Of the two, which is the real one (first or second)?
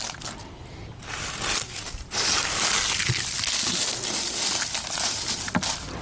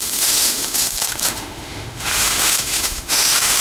first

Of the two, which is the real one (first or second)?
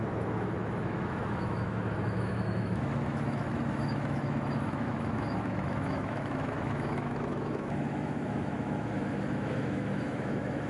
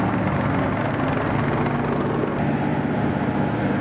second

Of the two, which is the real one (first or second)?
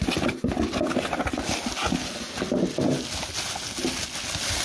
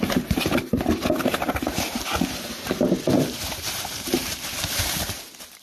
first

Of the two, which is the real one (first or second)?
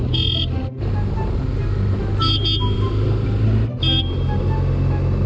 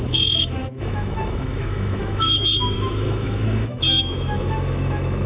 first